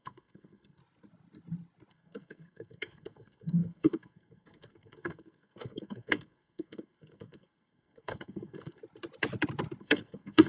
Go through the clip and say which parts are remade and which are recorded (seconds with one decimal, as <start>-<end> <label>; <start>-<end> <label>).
0.0-0.8 remade; 0.8-1.9 recorded; 1.9-8.8 remade; 8.8-9.8 recorded; 9.8-10.5 remade